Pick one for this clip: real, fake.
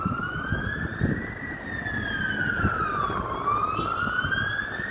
real